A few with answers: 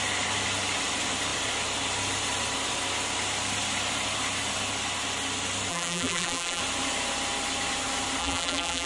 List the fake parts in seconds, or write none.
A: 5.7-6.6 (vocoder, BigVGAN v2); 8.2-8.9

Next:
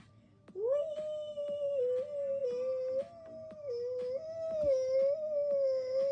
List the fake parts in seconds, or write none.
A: none

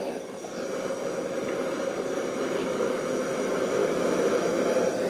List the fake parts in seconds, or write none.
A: 2.6-3.4 (autoencoder, DAC-VAE); 3.8-4.6

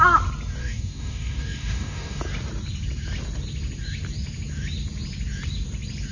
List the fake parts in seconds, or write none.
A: 0.6-2.2 (codec, DAC)

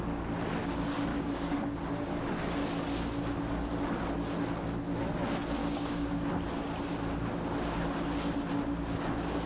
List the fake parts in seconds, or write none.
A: 1.1-1.7 (codec, DAC); 5.6-6.3

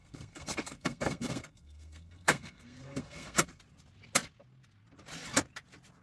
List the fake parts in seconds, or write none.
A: 0.0-3.6 (codec, SNAC)

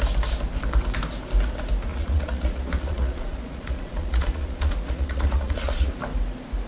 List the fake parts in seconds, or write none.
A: 1.9-5.9 (vocoder, Vocos)

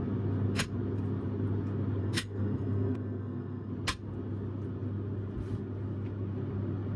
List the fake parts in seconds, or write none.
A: 2.0-3.7 (codec, SNAC)